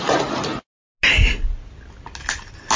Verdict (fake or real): real